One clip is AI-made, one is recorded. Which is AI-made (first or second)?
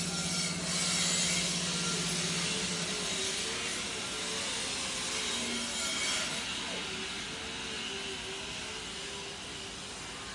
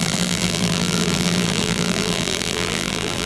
second